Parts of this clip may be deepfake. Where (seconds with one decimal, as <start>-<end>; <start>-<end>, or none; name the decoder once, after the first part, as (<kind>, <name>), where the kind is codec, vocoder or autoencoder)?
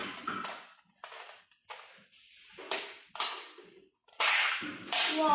none